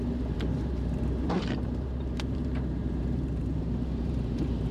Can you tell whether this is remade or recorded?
remade